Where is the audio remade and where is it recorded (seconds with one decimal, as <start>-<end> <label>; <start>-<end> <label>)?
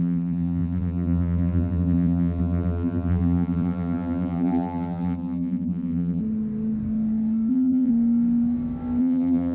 0.0-6.2 remade; 6.2-7.5 recorded; 7.5-7.9 remade; 7.9-9.0 recorded; 9.0-9.5 remade